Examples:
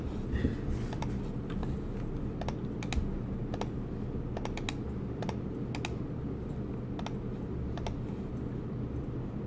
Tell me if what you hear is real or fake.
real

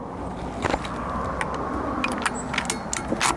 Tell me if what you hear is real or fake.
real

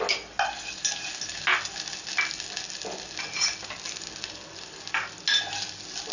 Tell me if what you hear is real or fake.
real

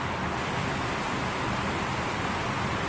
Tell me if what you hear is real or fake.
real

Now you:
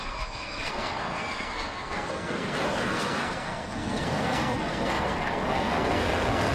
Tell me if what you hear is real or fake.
fake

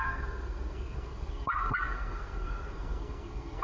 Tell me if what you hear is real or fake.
fake